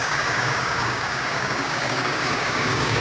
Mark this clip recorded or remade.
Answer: remade